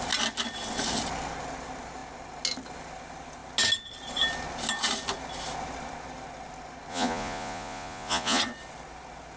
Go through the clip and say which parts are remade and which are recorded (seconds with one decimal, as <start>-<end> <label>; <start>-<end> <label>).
0.0-6.9 recorded; 6.9-8.4 remade; 8.4-9.4 recorded